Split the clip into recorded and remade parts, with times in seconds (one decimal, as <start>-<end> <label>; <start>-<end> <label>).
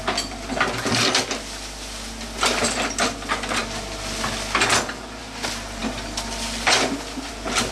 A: 0.0-7.7 recorded